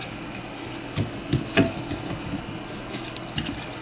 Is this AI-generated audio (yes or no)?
no